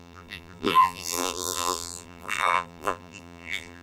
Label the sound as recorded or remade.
remade